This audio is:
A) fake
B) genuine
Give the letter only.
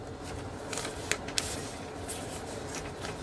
B